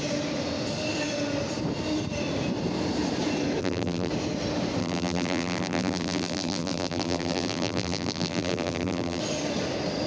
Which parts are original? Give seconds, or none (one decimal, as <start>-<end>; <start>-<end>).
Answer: 0.0-3.6; 4.1-4.8; 9.2-10.1